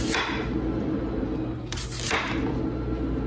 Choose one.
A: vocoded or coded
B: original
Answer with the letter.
B